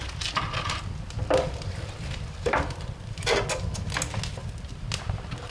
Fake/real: real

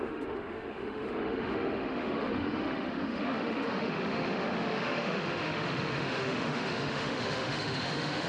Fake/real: fake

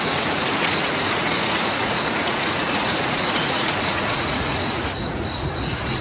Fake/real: fake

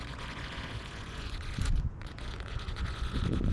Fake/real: fake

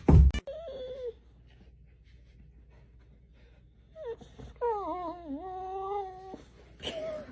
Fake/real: real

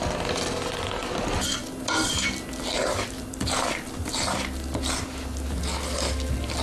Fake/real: real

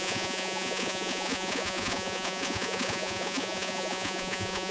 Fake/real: fake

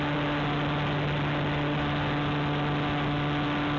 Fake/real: real